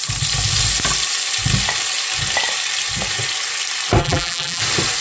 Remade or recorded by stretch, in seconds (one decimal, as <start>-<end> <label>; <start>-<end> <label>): 0.0-4.0 recorded; 4.0-4.6 remade; 4.6-5.0 recorded